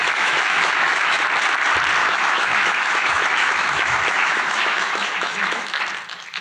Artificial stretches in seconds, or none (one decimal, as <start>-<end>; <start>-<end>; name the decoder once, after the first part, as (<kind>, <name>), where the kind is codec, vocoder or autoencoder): 0.0-1.2 (autoencoder, DAC-VAE); 2.0-5.8